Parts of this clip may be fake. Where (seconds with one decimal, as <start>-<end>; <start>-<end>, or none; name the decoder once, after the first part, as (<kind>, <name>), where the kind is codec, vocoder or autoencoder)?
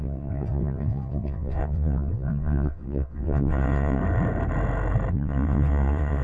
0.0-4.0 (vocoder, WaveNeXt); 5.1-6.2